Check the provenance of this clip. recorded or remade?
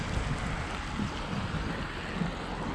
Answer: recorded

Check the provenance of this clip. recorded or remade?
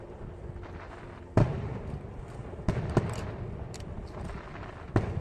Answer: recorded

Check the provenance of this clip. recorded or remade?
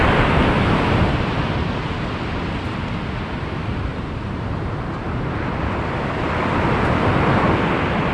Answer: recorded